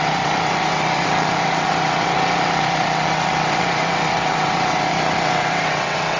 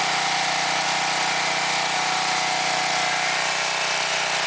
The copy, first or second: first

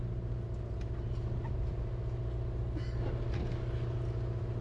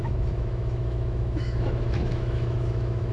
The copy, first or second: second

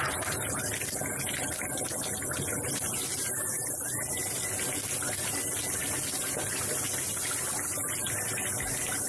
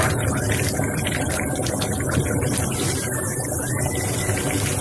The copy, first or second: second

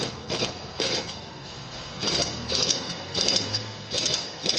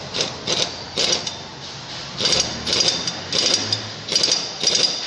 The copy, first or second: first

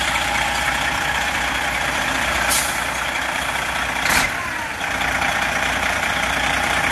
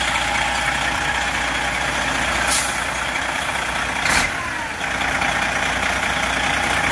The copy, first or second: first